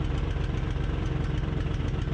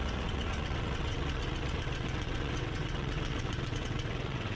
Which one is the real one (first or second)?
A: first